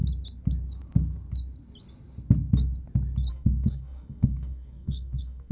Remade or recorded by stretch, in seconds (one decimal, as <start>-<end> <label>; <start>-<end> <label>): 0.0-3.3 recorded; 3.3-5.5 remade